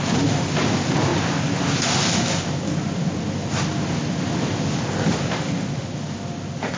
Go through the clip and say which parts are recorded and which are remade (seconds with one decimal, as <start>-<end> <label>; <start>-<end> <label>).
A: 0.0-6.8 recorded